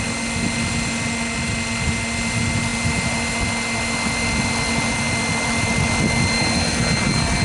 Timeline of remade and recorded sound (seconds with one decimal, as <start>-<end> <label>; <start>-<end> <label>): 0.0-7.4 recorded